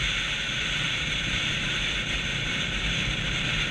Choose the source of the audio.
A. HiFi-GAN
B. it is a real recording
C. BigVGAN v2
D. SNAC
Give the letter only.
C